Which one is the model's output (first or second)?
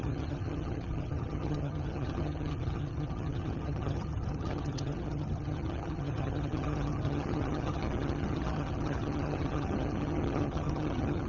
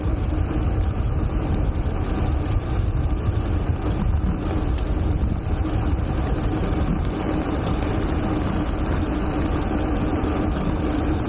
first